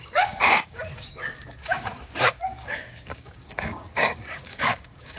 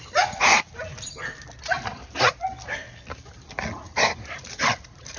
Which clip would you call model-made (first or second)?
first